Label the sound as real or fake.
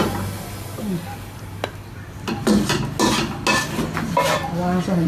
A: real